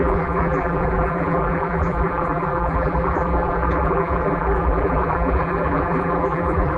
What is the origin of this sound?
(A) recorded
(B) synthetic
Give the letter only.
B